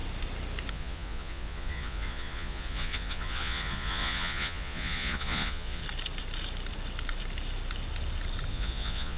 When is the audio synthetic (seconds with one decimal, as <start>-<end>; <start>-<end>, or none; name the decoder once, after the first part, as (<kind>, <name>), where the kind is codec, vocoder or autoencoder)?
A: 0.7-5.8 (vocoder, Vocos); 8.5-9.2